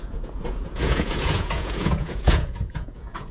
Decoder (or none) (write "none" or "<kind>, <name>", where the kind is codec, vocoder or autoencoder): vocoder, Vocos